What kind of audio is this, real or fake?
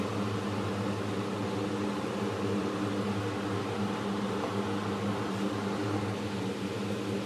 real